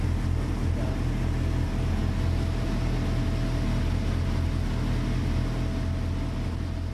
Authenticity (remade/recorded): recorded